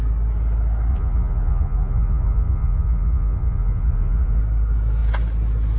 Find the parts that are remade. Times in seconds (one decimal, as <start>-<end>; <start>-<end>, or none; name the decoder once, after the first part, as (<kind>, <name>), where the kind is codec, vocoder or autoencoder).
0.9-4.4 (vocoder, Vocos)